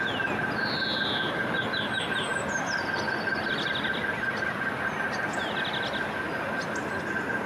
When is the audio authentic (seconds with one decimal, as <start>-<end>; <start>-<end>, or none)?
0.0-7.5